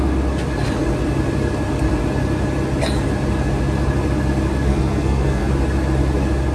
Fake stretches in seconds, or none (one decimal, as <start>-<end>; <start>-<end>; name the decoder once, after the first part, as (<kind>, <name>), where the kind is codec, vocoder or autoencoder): 4.7-5.5 (codec, SNAC)